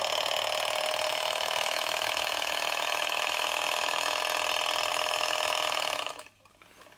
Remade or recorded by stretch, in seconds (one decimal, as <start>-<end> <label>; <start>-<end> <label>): 0.0-1.1 recorded; 1.1-4.2 remade; 4.2-4.9 recorded; 4.9-6.3 remade; 6.3-7.0 recorded